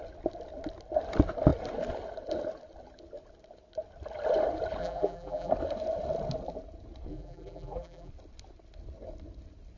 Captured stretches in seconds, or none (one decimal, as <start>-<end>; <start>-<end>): 0.0-4.8; 5.5-7.1; 8.1-9.8